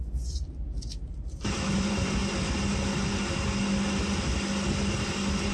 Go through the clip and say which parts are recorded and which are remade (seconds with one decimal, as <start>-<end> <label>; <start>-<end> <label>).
0.0-2.2 remade; 2.2-5.5 recorded